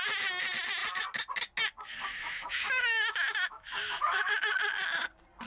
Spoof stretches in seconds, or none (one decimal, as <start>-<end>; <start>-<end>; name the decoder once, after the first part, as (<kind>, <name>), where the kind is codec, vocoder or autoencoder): 2.1-4.5 (autoencoder, DAC-VAE)

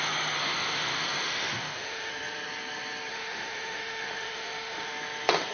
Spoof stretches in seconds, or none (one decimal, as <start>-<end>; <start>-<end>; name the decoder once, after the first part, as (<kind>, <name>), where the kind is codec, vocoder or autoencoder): 0.4-2.1 (autoencoder, DAC-VAE); 3.1-4.9

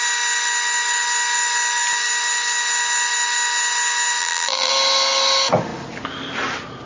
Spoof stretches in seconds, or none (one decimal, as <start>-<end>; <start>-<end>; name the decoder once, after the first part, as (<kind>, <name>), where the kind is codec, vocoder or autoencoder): 4.2-4.7 (vocoder, BigVGAN v2)

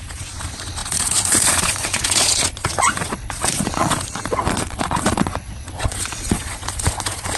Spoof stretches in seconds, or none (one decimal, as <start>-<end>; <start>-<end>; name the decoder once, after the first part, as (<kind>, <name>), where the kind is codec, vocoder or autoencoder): 0.0-7.4 (vocoder, Vocos)

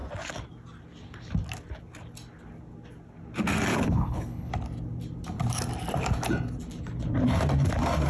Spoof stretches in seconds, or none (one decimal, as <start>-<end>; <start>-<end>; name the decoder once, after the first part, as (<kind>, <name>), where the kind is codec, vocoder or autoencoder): 3.7-4.5 (codec, HILCodec)

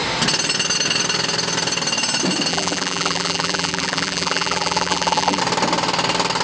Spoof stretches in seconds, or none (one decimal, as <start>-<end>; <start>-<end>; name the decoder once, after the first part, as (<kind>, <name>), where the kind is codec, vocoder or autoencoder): 2.5-5.4 (vocoder, BigVGAN v2)

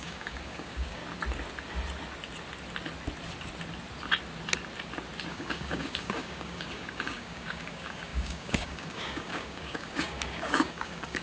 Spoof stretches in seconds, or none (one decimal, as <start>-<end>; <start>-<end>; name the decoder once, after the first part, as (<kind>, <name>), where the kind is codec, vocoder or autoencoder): 0.0-1.0 (codec, DAC); 5.3-11.2

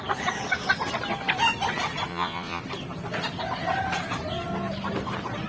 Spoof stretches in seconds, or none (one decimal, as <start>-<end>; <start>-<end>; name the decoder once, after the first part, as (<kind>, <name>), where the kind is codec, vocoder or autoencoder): 2.1-2.6 (vocoder, Vocos)